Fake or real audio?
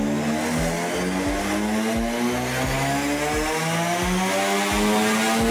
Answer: real